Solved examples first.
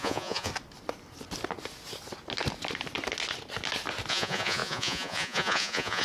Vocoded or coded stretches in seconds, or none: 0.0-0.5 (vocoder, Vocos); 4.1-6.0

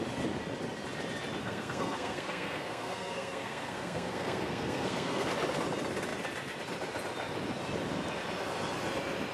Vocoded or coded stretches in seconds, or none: 1.4-5.3 (codec, SNAC)

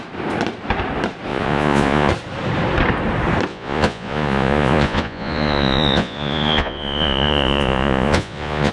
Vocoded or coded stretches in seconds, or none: 1.3-2.1 (vocoder, Vocos); 3.5-8.7

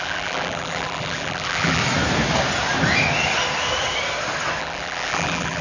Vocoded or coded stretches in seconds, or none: 0.0-1.8 (vocoder, BigVGAN v2); 4.6-5.6

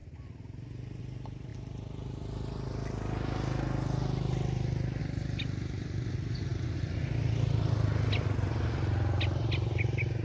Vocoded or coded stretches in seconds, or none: none

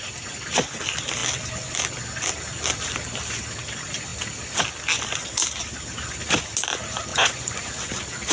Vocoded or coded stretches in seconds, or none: 7.1-7.7 (vocoder, Vocos)